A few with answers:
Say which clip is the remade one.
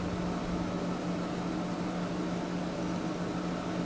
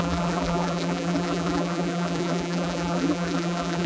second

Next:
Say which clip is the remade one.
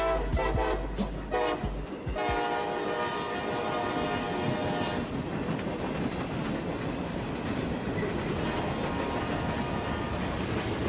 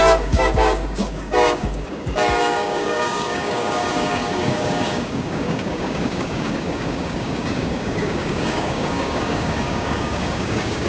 second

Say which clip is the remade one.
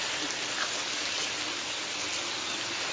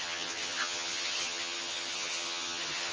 second